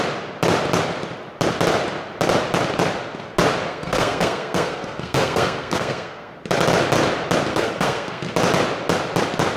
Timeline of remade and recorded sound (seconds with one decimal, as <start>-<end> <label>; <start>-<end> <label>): 0.0-3.7 recorded; 3.7-6.3 remade; 6.3-7.5 recorded; 7.5-8.3 remade; 8.3-9.6 recorded